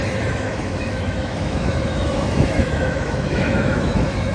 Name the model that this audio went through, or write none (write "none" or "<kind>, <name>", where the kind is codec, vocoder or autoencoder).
autoencoder, DAC-VAE